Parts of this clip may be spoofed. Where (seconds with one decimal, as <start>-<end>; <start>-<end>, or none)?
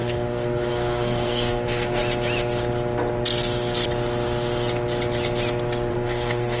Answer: 0.0-2.0; 5.9-6.6